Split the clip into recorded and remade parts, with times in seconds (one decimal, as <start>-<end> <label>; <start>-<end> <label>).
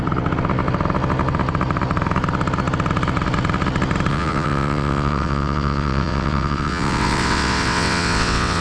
0.0-4.1 recorded; 4.1-8.6 remade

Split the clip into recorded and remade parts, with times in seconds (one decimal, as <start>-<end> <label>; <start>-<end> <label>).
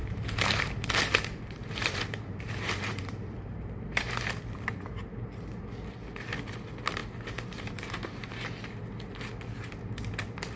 0.0-4.4 remade; 4.4-10.6 recorded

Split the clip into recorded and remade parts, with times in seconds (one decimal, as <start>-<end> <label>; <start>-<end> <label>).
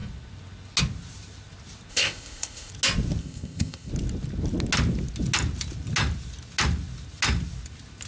0.0-1.9 recorded; 1.9-2.7 remade; 2.7-3.2 recorded; 3.2-3.9 remade; 3.9-8.1 recorded